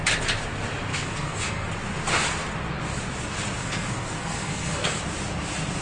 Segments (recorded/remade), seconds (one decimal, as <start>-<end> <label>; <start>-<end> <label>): 0.0-0.9 recorded; 0.9-1.7 remade; 1.7-3.6 recorded; 3.6-5.0 remade; 5.0-5.8 recorded

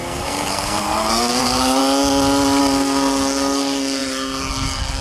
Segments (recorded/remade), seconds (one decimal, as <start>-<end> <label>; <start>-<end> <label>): 0.0-1.8 remade; 1.8-2.6 recorded; 2.6-5.0 remade

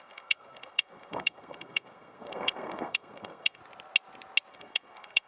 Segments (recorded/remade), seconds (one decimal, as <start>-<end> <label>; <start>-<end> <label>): 0.0-3.6 remade; 3.6-4.5 recorded; 4.5-5.3 remade